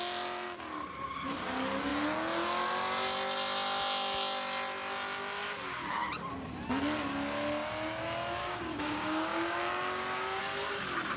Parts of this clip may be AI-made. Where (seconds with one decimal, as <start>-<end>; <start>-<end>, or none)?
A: 8.4-10.4